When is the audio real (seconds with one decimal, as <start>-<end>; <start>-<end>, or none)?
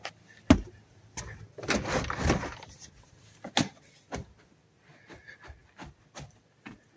0.0-7.0